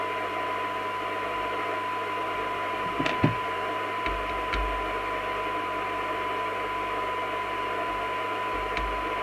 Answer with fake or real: real